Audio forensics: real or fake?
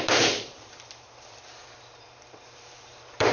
fake